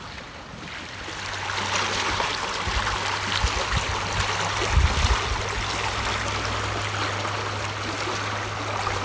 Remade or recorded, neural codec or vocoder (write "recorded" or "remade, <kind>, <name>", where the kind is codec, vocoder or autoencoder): recorded